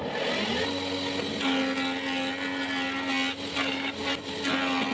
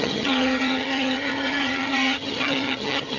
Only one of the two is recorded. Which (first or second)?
first